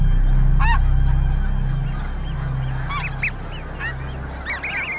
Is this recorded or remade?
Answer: recorded